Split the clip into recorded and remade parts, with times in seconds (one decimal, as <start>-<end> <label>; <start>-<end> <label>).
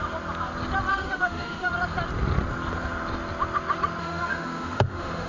0.0-0.9 recorded; 0.9-1.7 remade; 1.7-4.0 recorded; 4.0-5.3 remade